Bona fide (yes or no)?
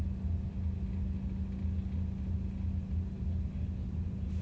yes